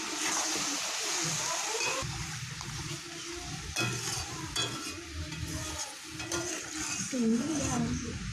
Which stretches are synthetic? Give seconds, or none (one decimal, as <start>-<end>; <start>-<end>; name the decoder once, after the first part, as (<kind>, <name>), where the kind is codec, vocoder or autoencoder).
0.0-4.6 (vocoder, BigVGAN v2); 6.3-8.3